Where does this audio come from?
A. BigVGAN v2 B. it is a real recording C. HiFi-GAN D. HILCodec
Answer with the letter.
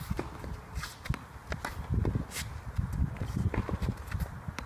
B